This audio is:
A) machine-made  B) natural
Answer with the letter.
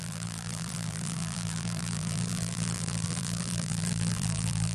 A